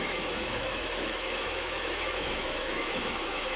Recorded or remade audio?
remade